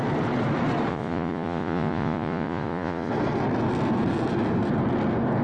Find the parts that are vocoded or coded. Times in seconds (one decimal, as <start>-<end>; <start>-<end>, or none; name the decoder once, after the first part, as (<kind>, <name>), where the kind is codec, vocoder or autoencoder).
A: 0.9-3.1 (vocoder, Vocos)